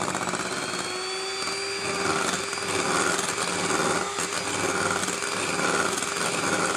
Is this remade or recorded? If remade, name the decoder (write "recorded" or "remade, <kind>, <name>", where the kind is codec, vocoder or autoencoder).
recorded